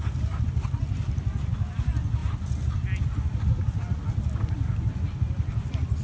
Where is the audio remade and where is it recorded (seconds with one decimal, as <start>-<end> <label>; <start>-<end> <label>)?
0.0-6.0 recorded